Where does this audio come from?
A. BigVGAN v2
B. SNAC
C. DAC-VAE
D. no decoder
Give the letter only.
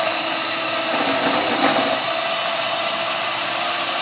D